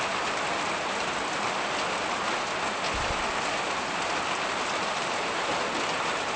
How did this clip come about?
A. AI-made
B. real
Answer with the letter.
B